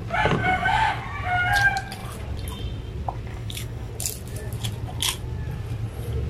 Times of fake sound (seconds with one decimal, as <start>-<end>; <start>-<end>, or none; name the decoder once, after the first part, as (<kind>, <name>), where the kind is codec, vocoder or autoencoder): 0.4-0.9 (codec, DAC); 3.3-3.9